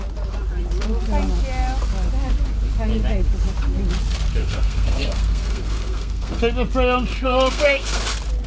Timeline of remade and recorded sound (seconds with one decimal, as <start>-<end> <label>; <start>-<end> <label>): 0.0-4.4 recorded; 4.4-6.4 remade; 6.4-7.1 recorded; 7.1-8.0 remade; 8.0-8.5 recorded